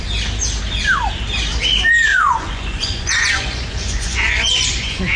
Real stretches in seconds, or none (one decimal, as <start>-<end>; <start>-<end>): 0.0-2.1